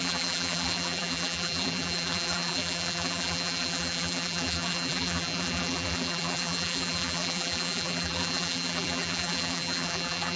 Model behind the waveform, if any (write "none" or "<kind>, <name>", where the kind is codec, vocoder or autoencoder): vocoder, BigVGAN v2